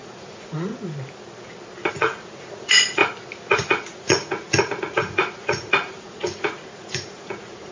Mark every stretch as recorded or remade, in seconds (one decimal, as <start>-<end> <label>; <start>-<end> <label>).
0.0-0.7 remade; 0.7-1.9 recorded; 1.9-3.0 remade; 3.0-3.5 recorded; 3.5-7.7 remade